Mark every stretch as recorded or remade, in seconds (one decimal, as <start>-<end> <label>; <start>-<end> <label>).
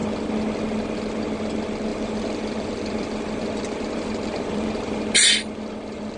0.0-1.9 recorded; 1.9-5.0 remade; 5.0-6.2 recorded